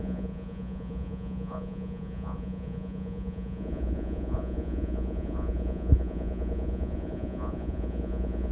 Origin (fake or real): fake